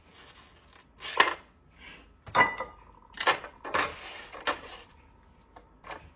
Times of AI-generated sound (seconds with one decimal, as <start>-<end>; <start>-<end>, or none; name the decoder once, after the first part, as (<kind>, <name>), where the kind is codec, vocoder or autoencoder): none